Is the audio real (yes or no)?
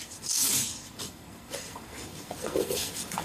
no